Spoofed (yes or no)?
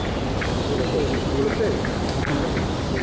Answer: no